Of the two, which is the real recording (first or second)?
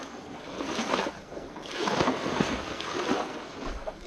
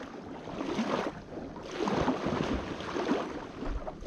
second